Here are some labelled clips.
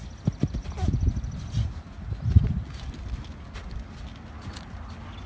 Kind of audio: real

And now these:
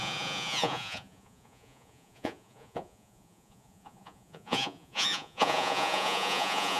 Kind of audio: fake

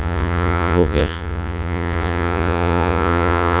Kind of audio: fake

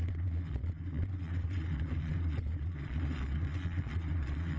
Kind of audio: fake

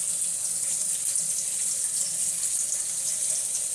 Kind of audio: real